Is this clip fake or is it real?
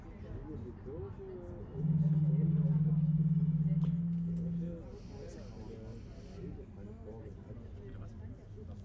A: real